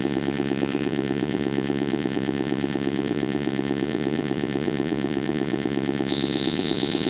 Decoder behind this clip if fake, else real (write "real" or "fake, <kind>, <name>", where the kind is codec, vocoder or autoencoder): fake, vocoder, Vocos